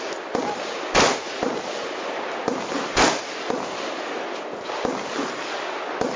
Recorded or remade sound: recorded